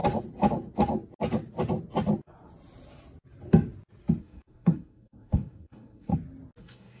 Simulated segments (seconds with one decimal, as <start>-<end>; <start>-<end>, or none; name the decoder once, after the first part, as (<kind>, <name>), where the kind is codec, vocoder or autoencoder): 4.2-6.1 (codec, SNAC); 6.6-7.0